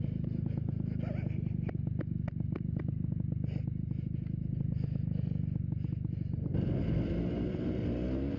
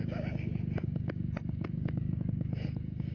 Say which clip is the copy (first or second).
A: second